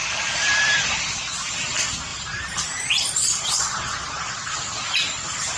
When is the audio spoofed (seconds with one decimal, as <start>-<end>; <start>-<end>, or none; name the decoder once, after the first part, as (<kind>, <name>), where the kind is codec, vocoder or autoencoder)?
0.0-1.5 (vocoder, BigVGAN v2); 2.1-5.6